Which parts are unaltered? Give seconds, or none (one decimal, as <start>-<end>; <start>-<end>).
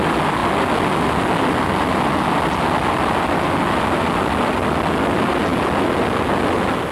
0.0-6.9